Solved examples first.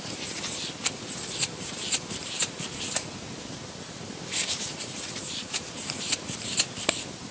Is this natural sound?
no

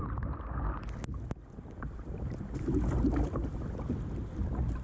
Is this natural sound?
yes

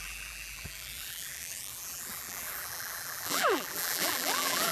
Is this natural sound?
no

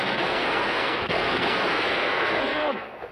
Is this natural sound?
no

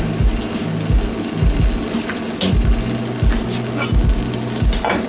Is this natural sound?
yes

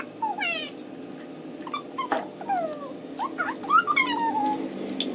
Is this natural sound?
yes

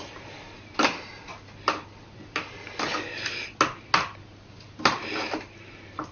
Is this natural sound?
yes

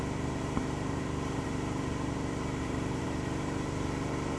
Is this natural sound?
no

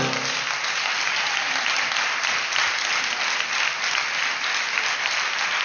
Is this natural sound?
yes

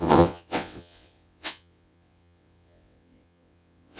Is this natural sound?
no